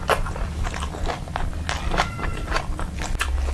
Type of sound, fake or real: real